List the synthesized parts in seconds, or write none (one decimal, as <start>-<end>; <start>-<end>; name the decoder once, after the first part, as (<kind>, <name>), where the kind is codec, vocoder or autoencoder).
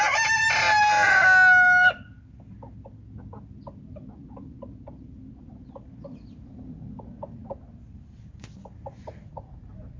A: none